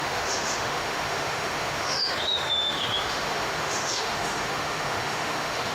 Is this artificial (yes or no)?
yes